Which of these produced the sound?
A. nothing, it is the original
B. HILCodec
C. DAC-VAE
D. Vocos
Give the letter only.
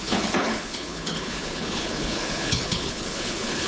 B